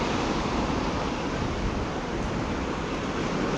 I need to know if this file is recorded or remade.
recorded